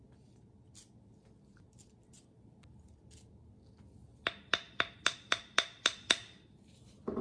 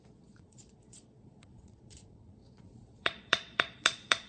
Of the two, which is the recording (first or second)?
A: first